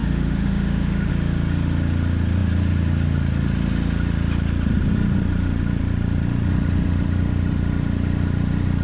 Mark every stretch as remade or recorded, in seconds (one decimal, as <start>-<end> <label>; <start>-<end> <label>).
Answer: 0.0-1.1 remade; 1.1-8.8 recorded